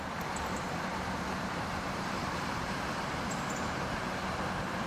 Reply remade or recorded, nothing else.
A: remade